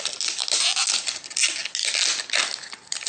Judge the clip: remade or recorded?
recorded